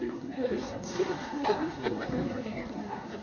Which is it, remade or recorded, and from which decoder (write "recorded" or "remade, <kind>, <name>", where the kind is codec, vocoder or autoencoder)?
remade, codec, SNAC